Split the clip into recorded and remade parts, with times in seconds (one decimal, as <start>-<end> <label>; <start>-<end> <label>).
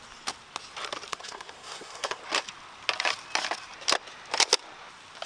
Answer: 0.0-1.1 recorded; 1.1-2.2 remade; 2.2-5.3 recorded